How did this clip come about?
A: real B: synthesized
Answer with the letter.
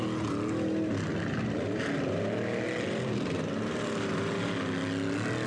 A